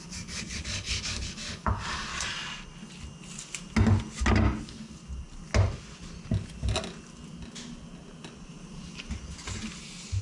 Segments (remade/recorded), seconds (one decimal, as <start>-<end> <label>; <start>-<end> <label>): 0.0-2.1 remade; 2.1-4.6 recorded; 4.6-5.0 remade; 5.0-10.2 recorded